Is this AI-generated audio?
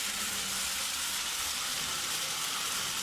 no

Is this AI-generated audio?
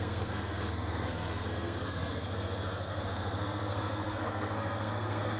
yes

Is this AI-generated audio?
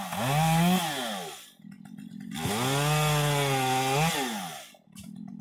no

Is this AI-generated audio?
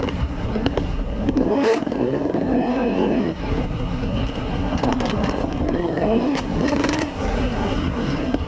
yes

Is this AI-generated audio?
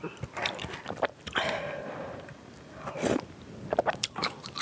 no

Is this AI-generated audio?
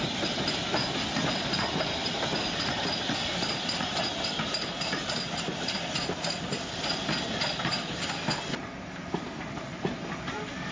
no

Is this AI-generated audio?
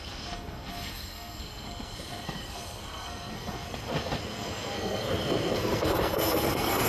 yes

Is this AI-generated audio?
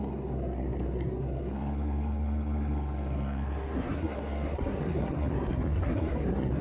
yes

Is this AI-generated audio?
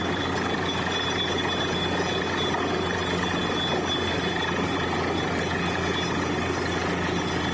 no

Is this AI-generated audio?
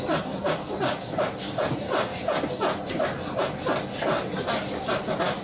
no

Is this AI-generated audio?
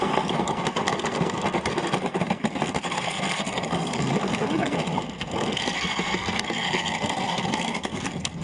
yes